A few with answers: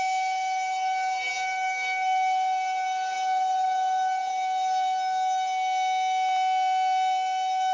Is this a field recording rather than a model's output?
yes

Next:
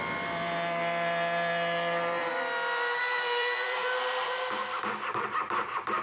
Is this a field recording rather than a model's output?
no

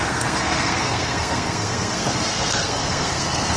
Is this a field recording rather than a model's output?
no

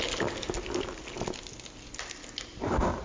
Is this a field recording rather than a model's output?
yes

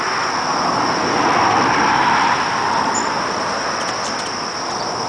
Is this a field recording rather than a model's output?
yes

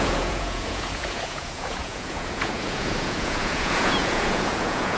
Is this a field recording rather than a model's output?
no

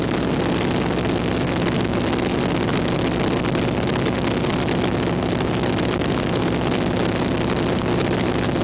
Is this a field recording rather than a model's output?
yes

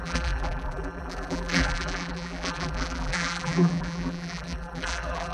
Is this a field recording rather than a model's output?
no